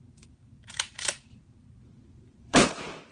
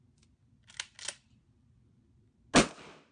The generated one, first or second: first